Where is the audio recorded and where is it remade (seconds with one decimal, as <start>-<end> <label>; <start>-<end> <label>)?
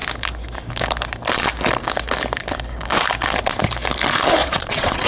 0.0-4.4 recorded; 4.4-5.1 remade